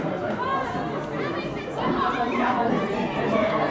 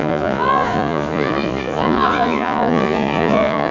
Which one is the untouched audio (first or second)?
first